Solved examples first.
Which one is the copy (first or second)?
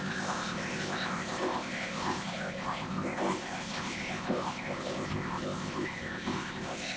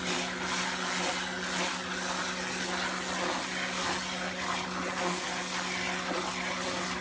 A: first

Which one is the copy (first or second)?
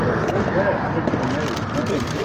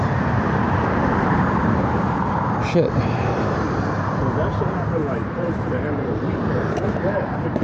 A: second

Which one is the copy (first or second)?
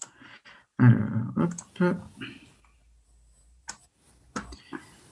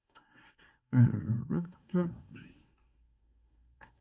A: second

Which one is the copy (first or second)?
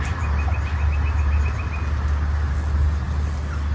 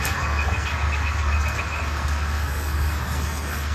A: second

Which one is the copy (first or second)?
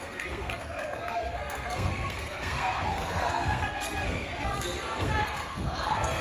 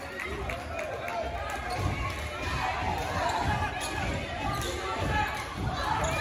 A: first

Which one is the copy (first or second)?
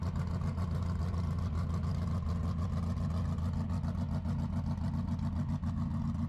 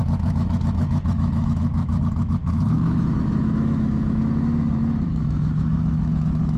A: second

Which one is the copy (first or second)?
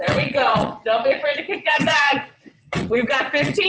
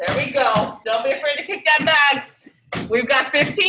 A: first